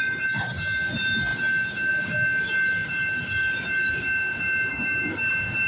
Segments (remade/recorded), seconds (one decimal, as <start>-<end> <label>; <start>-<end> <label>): 0.0-4.7 recorded; 4.7-5.3 remade; 5.3-5.7 recorded